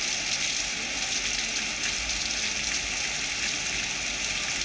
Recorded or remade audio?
recorded